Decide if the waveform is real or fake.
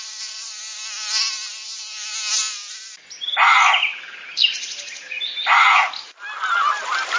real